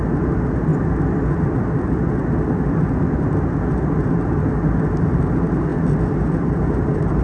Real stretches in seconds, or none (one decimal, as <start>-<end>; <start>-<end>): 0.7-5.0; 5.7-6.2